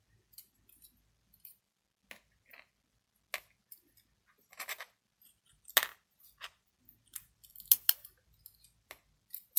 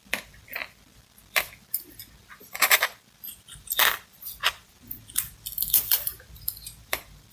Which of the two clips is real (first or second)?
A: first